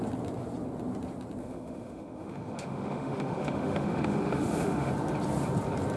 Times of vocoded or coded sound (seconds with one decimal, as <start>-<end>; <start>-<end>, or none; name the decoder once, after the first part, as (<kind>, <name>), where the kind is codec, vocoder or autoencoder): 1.4-4.9 (autoencoder, DAC-VAE)